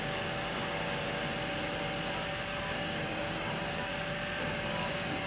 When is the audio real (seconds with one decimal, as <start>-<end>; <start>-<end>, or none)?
1.2-2.6; 3.9-4.5